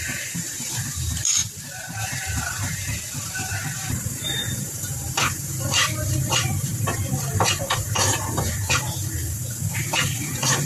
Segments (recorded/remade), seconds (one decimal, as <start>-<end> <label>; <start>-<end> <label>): 0.0-1.4 remade; 1.4-2.0 recorded; 2.0-9.0 remade; 9.0-9.8 recorded; 9.8-10.7 remade